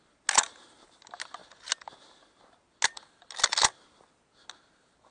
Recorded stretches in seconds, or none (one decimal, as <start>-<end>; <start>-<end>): 0.0-5.1